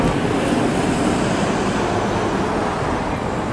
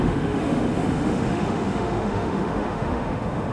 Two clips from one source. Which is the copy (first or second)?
second